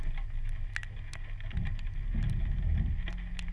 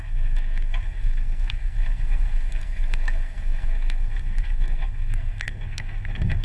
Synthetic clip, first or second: second